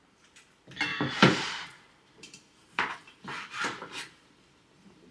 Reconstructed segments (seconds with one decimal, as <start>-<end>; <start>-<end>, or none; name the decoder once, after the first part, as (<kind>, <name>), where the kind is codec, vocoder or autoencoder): 0.9-4.0 (vocoder, BigVGAN v2)